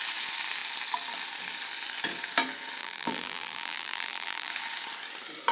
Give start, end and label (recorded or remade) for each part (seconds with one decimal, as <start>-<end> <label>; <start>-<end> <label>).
0.0-2.8 recorded; 2.8-4.5 remade; 4.5-5.5 recorded